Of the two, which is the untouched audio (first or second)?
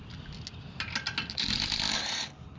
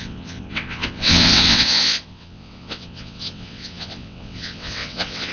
first